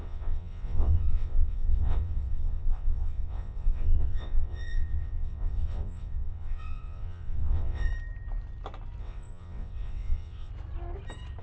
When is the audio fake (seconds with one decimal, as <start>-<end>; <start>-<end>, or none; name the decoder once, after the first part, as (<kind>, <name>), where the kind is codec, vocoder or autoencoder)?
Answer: 0.0-7.9 (vocoder, WaveNeXt); 9.0-10.5